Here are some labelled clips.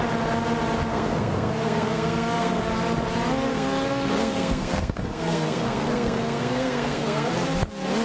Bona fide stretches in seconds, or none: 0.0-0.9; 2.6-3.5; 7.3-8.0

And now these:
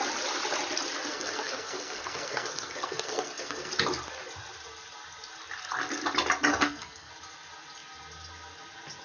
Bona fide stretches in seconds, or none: 0.0-1.1; 3.7-6.5; 7.1-9.0

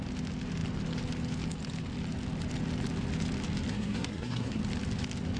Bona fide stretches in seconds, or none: 0.0-3.7; 4.6-5.4

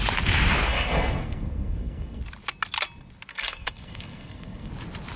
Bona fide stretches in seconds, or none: 0.0-0.7; 2.2-3.3; 4.7-5.2

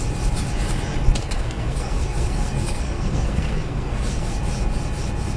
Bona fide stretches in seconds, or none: 0.0-1.2; 4.4-5.4